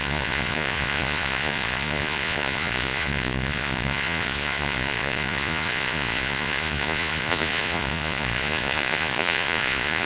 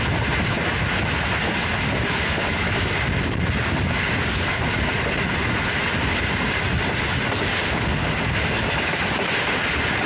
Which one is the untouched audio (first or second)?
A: second